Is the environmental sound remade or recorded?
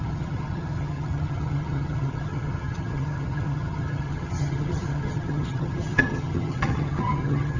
remade